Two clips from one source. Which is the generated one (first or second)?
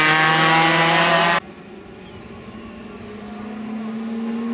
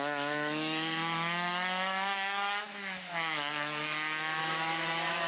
second